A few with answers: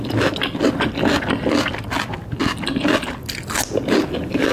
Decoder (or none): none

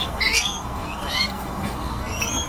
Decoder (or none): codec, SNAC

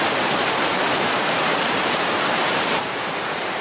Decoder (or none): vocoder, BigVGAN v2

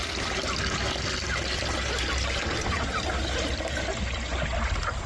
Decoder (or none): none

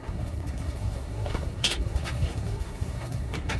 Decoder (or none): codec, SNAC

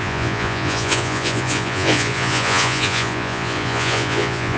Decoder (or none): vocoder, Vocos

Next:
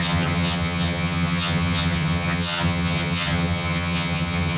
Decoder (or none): vocoder, HiFi-GAN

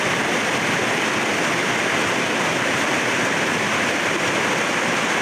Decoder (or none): none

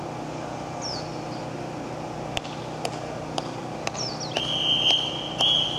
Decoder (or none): none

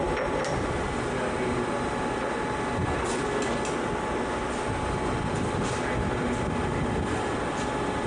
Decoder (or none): none